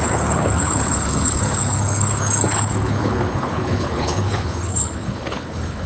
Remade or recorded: remade